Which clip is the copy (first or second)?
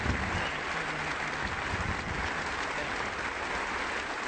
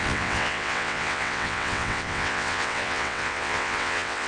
second